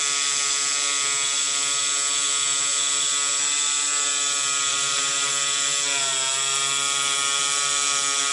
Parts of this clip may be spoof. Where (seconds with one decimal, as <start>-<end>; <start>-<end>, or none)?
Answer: 4.7-5.3